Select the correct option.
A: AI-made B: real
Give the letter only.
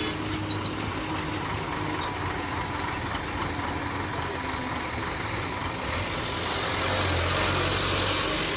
B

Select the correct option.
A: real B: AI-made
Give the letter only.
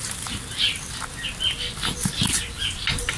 A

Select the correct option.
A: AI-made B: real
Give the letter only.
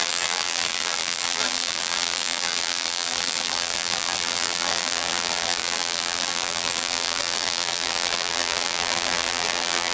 A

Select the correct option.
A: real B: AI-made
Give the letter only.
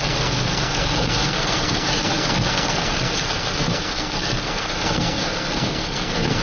B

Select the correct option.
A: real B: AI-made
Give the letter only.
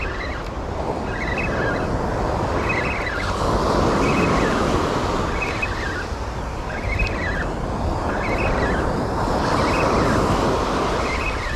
A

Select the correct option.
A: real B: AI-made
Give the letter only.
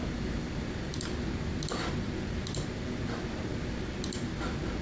A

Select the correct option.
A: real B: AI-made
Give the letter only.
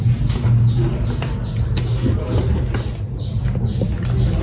A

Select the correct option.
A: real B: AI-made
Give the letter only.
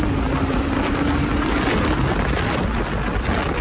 A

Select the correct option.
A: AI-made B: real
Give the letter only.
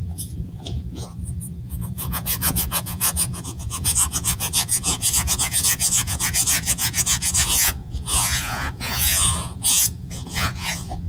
A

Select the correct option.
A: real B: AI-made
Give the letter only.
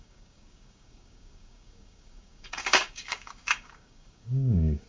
B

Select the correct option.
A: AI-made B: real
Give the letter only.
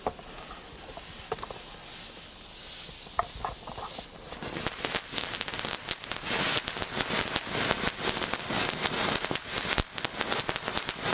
B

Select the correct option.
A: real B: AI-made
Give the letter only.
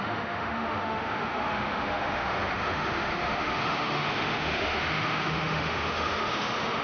B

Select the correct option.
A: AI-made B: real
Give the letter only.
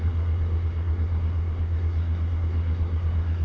A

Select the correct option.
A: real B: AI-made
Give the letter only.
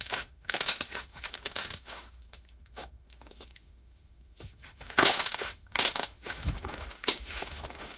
B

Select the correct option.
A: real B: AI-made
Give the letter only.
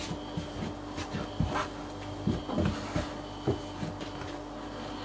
A